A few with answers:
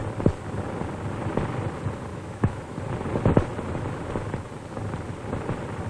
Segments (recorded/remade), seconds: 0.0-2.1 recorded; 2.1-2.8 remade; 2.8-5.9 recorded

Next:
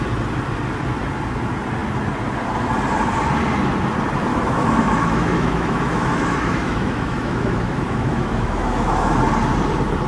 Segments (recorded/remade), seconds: 0.0-4.3 recorded; 4.3-9.2 remade; 9.2-10.1 recorded

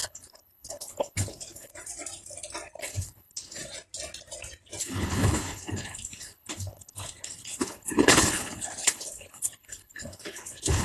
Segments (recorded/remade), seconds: 0.0-1.7 remade; 1.7-2.8 recorded; 2.8-3.6 remade; 3.6-4.8 recorded; 4.8-10.8 remade

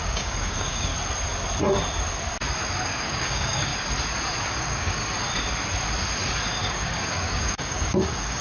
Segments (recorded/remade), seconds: 0.0-0.9 remade; 0.9-3.0 recorded; 3.0-3.7 remade; 3.7-4.5 recorded; 4.5-5.0 remade; 5.0-6.7 recorded; 6.7-8.4 remade